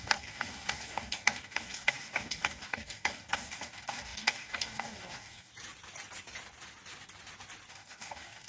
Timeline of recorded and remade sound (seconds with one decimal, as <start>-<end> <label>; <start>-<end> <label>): 0.0-5.5 remade; 5.5-7.7 recorded; 7.7-8.5 remade